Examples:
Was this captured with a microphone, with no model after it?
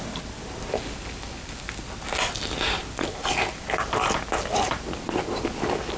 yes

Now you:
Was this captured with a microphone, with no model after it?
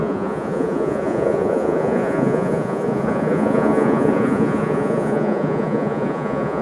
no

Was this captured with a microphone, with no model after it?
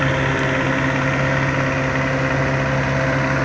yes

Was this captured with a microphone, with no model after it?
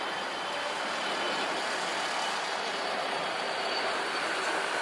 no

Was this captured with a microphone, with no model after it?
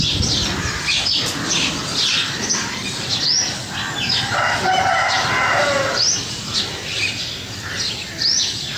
yes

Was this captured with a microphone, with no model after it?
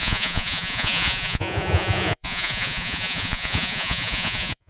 no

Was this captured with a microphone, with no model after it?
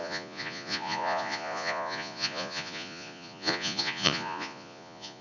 no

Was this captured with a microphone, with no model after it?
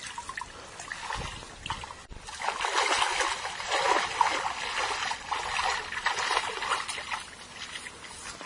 yes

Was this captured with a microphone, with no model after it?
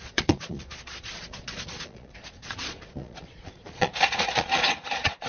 no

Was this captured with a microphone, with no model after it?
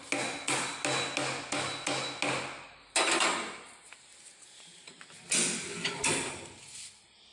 yes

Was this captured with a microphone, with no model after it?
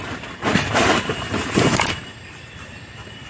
yes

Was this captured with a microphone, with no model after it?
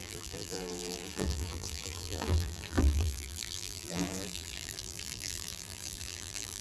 no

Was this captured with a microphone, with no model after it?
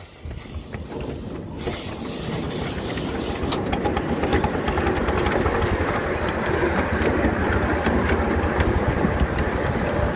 yes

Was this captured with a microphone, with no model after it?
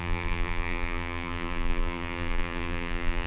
no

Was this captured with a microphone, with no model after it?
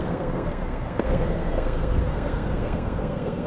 no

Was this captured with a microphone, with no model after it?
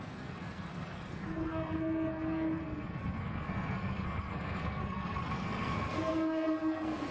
no